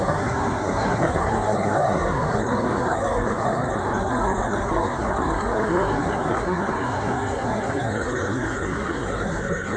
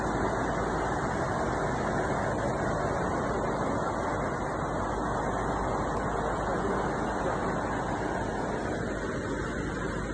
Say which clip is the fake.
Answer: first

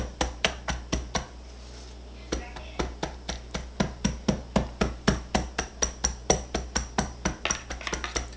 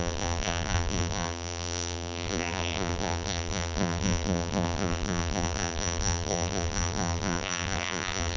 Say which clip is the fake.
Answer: second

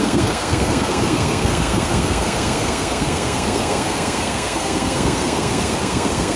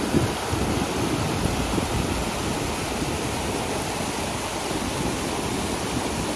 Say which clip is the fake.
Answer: first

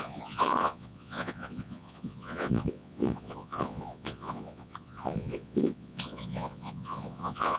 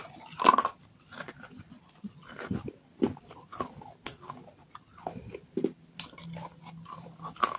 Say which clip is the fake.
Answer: first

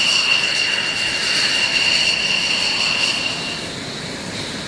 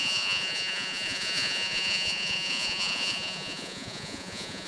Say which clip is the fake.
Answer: second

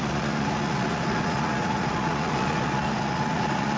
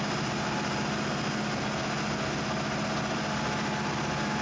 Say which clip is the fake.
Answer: first